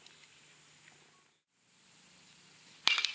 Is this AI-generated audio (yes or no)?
yes